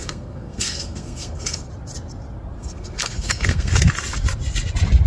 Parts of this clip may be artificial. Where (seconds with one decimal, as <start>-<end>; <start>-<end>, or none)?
0.0-1.7; 2.6-3.7